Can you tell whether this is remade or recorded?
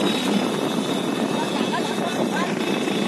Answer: recorded